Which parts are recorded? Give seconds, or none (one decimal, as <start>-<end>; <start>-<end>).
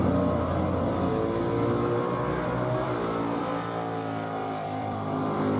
0.0-4.4